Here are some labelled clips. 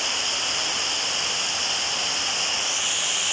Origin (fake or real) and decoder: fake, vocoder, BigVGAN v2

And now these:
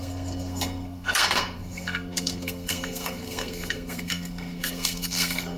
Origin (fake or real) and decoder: fake, codec, SNAC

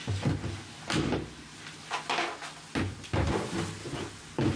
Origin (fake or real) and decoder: real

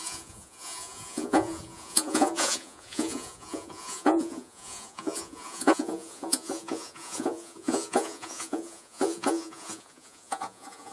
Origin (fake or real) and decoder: fake, vocoder, Vocos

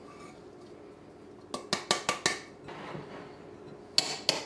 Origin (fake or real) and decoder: real